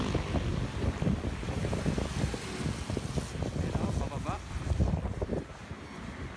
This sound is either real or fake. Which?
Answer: real